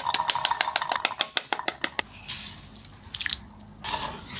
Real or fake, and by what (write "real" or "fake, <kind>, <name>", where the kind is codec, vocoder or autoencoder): real